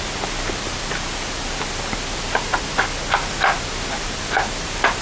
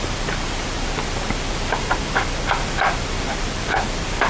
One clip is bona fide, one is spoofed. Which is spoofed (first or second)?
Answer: second